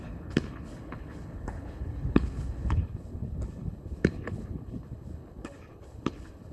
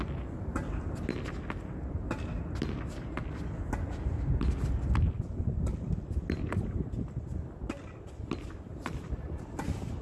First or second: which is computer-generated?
first